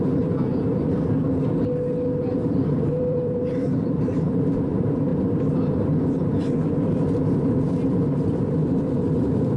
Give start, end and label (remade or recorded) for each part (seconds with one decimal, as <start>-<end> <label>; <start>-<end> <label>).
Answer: 0.0-0.5 remade; 0.5-2.3 recorded; 2.3-5.1 remade; 5.1-8.2 recorded; 8.2-9.6 remade